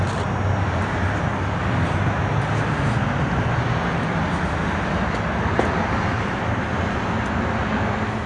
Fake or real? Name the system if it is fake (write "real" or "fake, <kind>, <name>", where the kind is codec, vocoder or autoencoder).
real